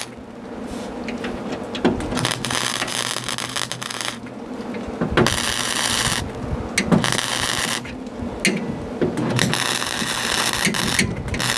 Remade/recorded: recorded